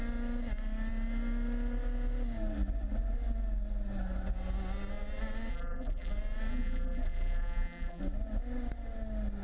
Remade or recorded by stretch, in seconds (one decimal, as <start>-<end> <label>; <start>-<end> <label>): 0.0-5.5 recorded; 5.5-6.1 remade; 6.1-6.5 recorded; 6.5-8.0 remade; 8.0-9.4 recorded